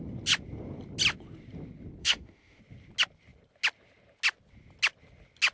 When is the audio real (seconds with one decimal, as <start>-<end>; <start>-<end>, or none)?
0.0-2.0; 2.6-5.5